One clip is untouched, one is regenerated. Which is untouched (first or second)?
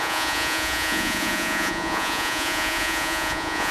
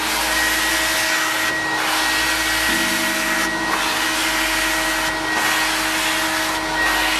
second